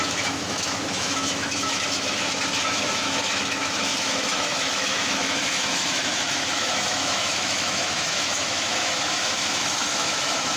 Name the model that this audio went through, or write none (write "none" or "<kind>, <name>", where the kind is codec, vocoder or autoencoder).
autoencoder, DAC-VAE